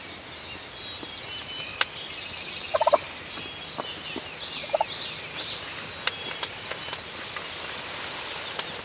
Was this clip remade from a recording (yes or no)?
no